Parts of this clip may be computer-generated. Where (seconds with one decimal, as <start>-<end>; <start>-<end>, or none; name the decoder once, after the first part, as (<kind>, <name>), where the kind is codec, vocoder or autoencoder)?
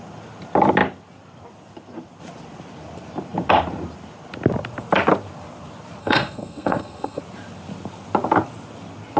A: 6.0-7.2 (codec, SNAC)